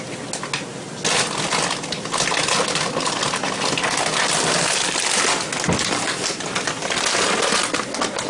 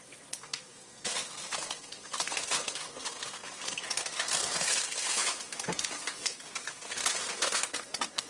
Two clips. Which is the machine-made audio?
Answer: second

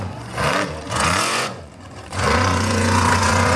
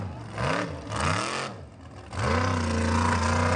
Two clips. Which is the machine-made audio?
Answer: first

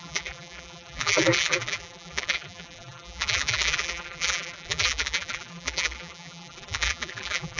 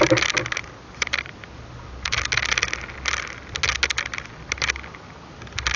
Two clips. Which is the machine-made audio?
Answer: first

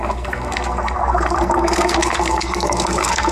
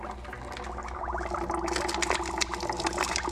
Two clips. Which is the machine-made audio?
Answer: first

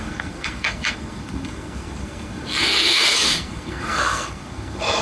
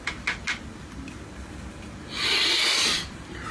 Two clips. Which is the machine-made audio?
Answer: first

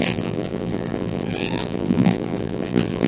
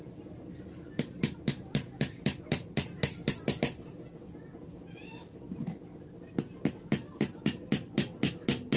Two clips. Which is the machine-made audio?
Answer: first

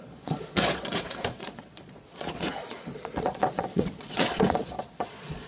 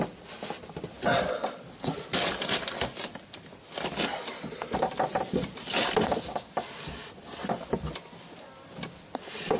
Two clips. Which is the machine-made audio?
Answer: first